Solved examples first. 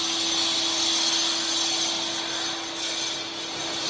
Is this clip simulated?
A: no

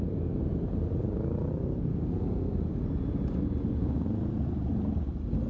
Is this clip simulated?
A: no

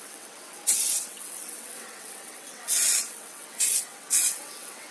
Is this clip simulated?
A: yes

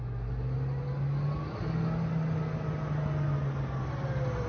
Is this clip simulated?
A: no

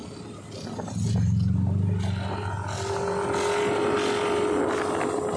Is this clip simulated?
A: no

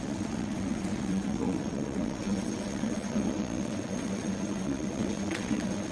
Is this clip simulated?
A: yes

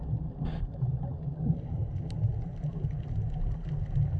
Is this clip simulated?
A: no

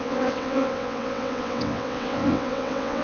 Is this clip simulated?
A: yes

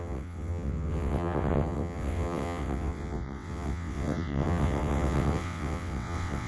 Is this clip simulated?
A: yes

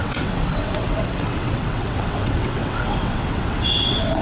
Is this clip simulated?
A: yes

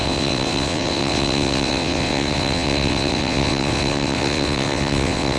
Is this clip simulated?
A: yes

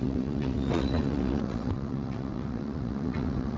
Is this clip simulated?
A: yes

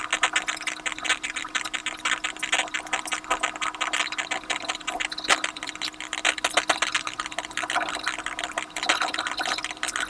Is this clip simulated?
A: no